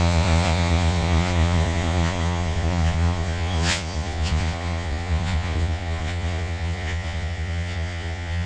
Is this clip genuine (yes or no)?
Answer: no